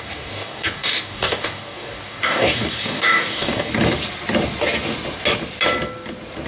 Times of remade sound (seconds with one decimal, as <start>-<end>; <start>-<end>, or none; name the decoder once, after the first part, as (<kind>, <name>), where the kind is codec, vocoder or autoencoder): 0.0-3.7 (codec, DAC)